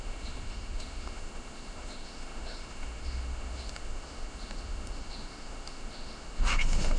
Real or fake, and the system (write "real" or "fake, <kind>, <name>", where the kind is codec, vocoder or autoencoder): fake, autoencoder, DAC-VAE